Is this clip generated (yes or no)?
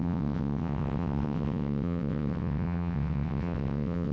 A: yes